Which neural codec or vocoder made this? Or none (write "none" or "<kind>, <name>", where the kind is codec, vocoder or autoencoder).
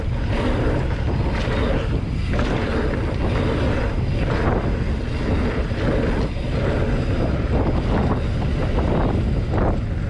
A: none